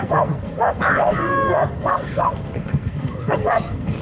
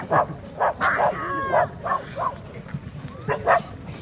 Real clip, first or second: second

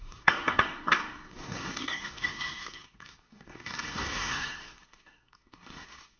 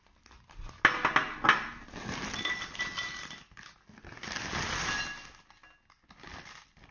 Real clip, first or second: second